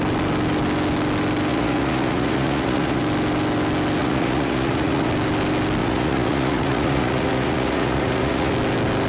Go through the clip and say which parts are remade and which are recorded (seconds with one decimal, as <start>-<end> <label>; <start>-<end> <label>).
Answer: 0.0-1.5 recorded; 1.5-3.0 remade; 3.0-4.0 recorded; 4.0-5.1 remade; 5.1-5.8 recorded; 5.8-8.5 remade; 8.5-9.1 recorded